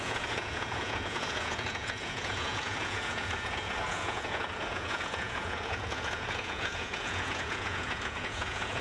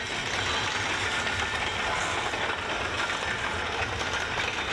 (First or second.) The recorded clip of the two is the second